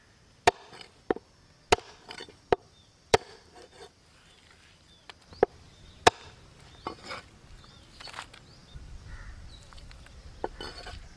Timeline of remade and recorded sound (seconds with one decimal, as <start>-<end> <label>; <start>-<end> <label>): 0.0-2.2 recorded; 2.2-3.5 remade; 3.5-8.6 recorded; 8.6-10.2 remade; 10.2-11.2 recorded